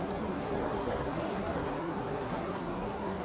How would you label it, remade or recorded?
remade